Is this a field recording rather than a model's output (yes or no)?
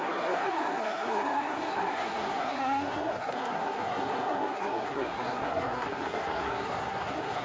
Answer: no